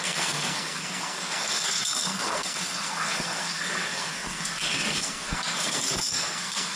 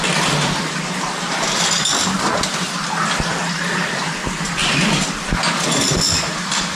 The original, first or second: second